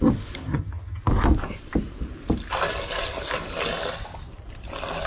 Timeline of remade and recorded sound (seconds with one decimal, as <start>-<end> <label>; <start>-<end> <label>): 0.0-0.4 recorded; 0.4-1.0 remade; 1.0-5.1 recorded